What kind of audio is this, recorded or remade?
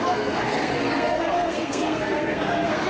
remade